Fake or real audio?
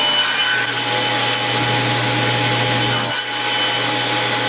real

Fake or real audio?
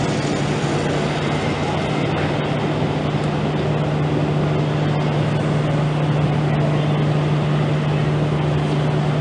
real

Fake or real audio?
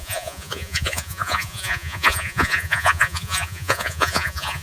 fake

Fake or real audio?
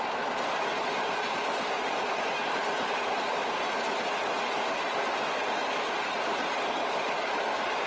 real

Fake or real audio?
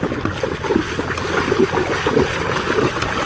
real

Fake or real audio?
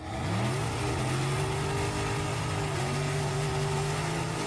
real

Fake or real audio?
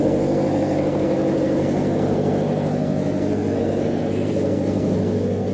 fake